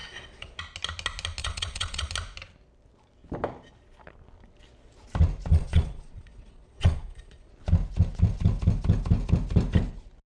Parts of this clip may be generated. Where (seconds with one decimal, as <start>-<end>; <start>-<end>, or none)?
0.0-0.6; 1.4-2.1; 5.5-7.5